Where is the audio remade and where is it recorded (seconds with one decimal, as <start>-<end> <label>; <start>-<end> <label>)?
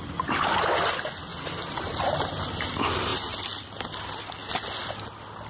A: 0.0-5.5 recorded